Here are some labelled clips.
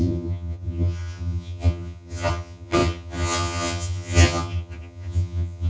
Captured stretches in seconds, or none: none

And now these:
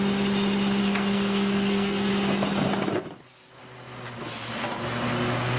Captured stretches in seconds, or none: 0.0-0.8; 2.1-5.6

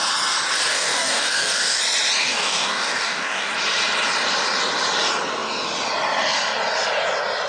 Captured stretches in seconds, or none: 0.0-0.7; 1.8-2.2; 3.5-7.5

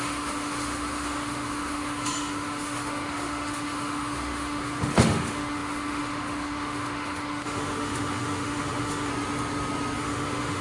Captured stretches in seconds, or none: 9.1-10.0

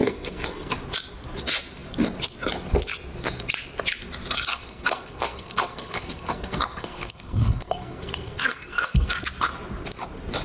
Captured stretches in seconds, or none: 0.7-4.5; 9.2-10.4

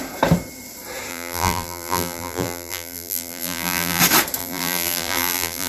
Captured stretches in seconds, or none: 0.0-1.1; 4.0-4.4

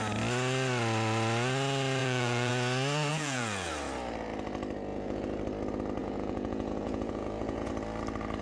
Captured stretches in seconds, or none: 0.0-2.0; 2.5-3.1; 3.7-4.9; 5.4-6.0; 7.7-8.4

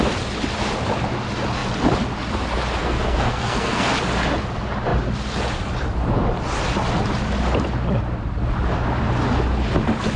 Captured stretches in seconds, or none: 0.0-2.8; 3.9-10.2